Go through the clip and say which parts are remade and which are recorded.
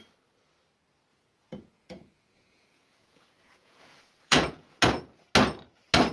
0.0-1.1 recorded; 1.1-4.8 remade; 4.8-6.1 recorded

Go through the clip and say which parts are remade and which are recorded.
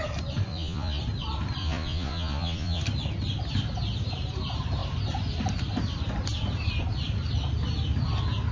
0.0-0.5 recorded; 0.5-1.0 remade; 1.0-1.6 recorded; 1.6-2.8 remade; 2.8-8.5 recorded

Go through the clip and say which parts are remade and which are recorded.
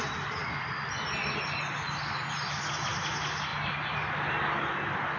0.0-5.2 recorded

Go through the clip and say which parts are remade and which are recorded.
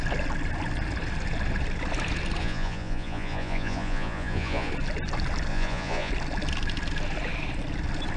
0.0-2.4 recorded; 2.4-4.7 remade; 4.7-5.5 recorded; 5.5-6.1 remade; 6.1-8.2 recorded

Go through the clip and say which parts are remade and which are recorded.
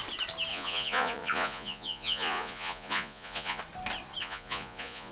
0.0-0.5 recorded; 0.5-3.6 remade; 3.6-4.2 recorded; 4.2-5.1 remade